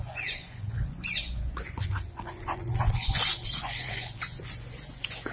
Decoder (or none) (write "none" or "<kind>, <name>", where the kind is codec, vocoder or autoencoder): vocoder, Vocos